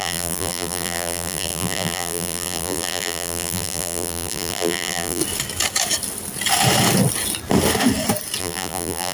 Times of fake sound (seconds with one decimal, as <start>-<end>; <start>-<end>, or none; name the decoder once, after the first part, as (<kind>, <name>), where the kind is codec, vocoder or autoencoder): 0.0-5.2 (vocoder, BigVGAN v2); 8.4-9.1